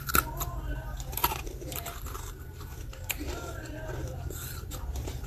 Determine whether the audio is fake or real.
fake